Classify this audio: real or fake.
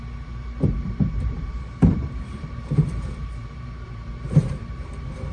fake